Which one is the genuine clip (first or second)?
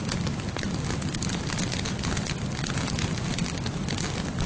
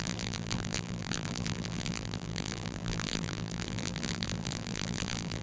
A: first